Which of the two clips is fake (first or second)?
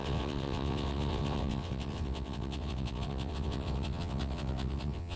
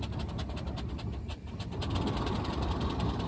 first